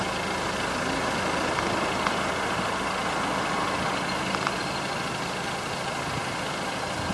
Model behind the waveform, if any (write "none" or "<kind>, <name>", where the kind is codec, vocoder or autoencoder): none